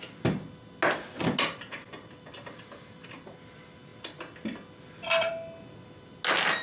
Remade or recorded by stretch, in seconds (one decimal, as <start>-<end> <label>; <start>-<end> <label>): 0.0-6.6 recorded